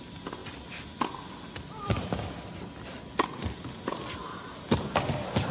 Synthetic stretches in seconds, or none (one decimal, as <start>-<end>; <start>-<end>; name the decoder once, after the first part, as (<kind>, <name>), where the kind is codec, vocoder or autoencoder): none